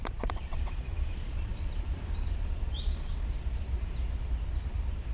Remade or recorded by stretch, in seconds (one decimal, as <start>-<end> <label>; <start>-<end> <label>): 0.0-1.5 remade; 1.5-2.5 recorded; 2.5-3.3 remade; 3.3-5.1 recorded